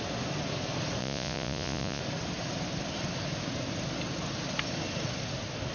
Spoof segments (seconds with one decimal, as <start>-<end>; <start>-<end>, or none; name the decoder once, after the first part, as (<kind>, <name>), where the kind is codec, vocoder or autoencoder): 1.0-2.0 (vocoder, Vocos)